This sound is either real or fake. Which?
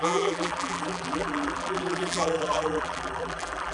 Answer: fake